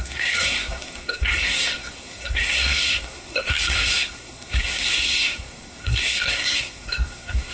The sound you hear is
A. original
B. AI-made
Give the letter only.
B